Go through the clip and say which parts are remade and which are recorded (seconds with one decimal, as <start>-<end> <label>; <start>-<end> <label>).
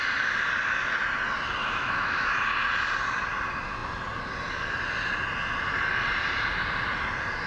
0.0-1.6 recorded; 1.6-2.3 remade; 2.3-7.5 recorded